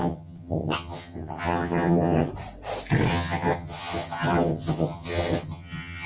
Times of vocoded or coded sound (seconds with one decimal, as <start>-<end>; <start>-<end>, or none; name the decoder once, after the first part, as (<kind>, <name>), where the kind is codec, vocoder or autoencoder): 0.0-2.3 (vocoder, HiFi-GAN); 3.1-6.1